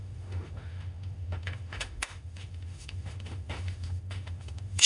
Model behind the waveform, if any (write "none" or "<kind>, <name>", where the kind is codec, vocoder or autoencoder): autoencoder, DAC-VAE